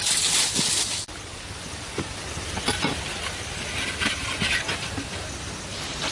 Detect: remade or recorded recorded